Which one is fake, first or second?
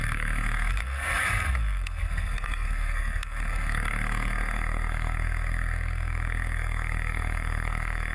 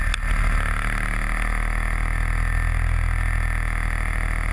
first